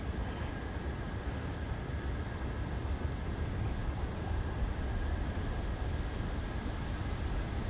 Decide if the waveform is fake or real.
real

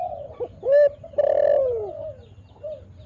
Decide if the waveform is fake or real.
real